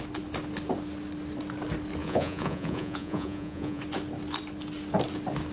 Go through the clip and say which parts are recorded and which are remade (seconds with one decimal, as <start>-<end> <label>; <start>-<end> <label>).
0.0-2.0 recorded; 2.0-3.8 remade; 3.8-5.5 recorded